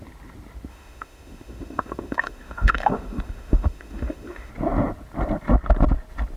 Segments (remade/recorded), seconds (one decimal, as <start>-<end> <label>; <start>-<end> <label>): 0.0-0.7 recorded; 0.7-4.5 remade; 4.5-6.4 recorded